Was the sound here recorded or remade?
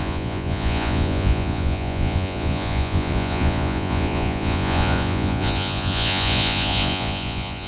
remade